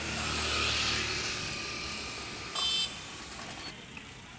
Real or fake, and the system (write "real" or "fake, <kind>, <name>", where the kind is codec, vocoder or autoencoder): real